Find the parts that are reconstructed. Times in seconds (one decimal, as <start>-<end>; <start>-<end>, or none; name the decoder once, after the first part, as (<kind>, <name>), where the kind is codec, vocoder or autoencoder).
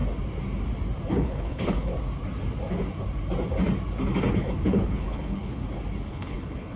1.1-1.9 (codec, HILCodec); 4.3-5.6; 6.1-6.8